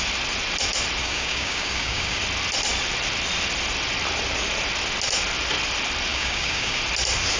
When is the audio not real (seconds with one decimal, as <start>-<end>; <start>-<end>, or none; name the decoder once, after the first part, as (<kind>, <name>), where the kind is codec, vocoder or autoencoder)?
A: 1.0-2.2 (codec, DAC); 6.1-6.8